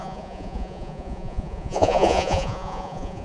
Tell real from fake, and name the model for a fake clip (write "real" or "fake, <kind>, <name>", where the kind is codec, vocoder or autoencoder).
fake, vocoder, Vocos